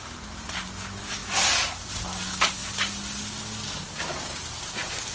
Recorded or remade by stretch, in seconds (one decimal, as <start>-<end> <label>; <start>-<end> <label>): 0.0-5.1 recorded